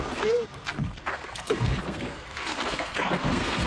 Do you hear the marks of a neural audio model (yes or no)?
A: yes